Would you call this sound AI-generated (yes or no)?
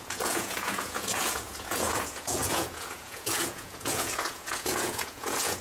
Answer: yes